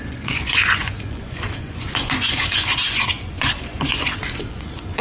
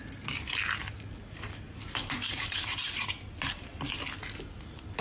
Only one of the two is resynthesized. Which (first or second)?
first